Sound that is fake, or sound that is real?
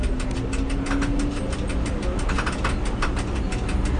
real